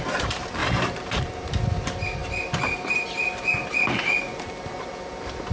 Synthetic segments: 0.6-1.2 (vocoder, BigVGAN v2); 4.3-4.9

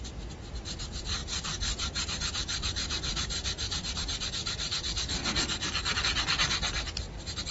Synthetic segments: 5.2-6.0 (codec, DAC)

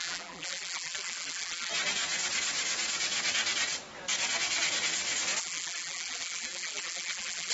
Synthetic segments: 0.0-1.7 (vocoder, BigVGAN v2); 5.4-7.5

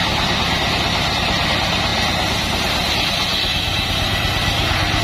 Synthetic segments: none

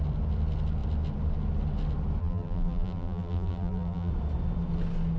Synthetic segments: 2.2-4.1 (vocoder, BigVGAN v2)

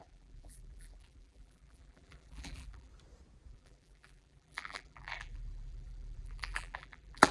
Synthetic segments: 0.0-2.9 (vocoder, BigVGAN v2); 3.5-7.3